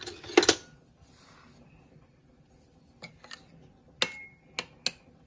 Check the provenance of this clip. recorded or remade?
recorded